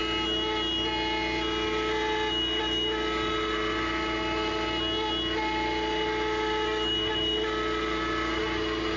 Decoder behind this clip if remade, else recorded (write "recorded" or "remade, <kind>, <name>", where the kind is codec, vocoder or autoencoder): recorded